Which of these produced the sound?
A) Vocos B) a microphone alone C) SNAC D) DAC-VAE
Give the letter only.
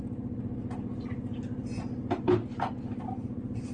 B